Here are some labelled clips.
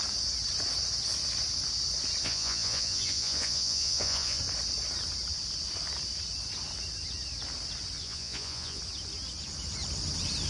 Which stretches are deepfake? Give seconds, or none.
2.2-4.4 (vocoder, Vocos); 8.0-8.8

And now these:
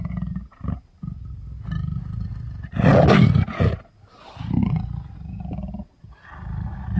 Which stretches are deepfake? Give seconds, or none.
none

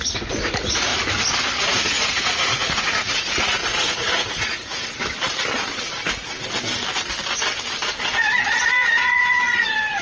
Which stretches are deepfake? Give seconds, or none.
0.0-0.9 (vocoder, Vocos); 1.6-4.9; 8.9-10.0

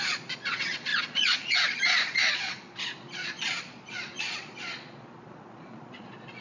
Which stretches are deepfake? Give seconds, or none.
0.0-6.4 (vocoder, Vocos)